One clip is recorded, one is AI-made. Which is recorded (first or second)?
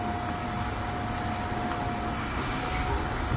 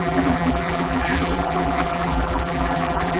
first